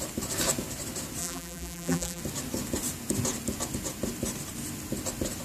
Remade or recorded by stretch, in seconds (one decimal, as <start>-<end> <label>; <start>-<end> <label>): 0.0-1.2 recorded; 1.2-2.2 remade; 2.2-5.4 recorded